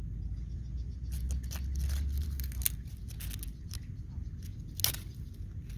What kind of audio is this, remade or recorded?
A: recorded